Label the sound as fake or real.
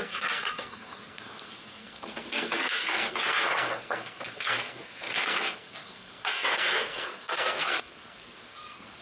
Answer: fake